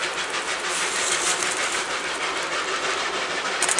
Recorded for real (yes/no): no